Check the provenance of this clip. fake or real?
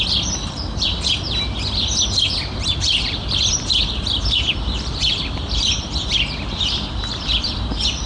fake